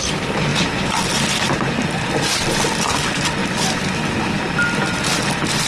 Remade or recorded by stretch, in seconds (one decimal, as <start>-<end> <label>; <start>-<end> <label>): 0.0-3.4 recorded; 3.4-4.1 remade; 4.1-5.7 recorded